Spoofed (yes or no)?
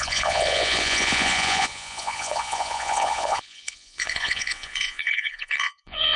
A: yes